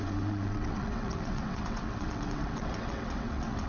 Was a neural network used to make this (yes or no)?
yes